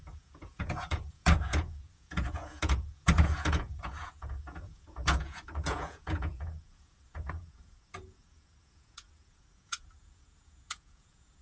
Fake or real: fake